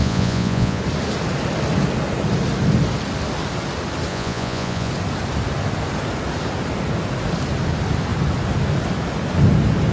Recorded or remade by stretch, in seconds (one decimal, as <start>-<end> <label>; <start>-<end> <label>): 0.0-0.8 remade; 0.8-4.1 recorded; 4.1-4.9 remade; 4.9-9.9 recorded